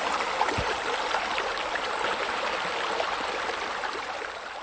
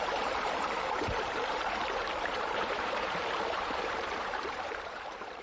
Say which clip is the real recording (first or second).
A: first